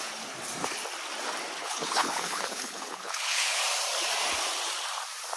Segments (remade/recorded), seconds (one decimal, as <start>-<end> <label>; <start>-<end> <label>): 0.0-1.6 recorded; 1.6-3.6 remade; 3.6-5.4 recorded